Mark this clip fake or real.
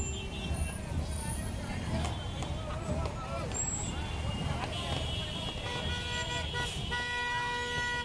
real